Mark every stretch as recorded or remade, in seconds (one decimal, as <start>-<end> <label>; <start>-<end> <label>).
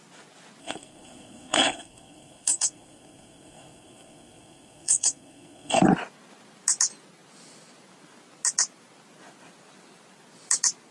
0.0-0.6 recorded; 0.6-5.8 remade; 5.8-10.9 recorded